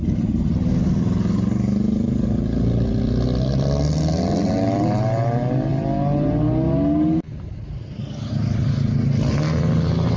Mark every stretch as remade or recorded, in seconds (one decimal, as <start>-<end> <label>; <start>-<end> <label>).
0.0-10.2 recorded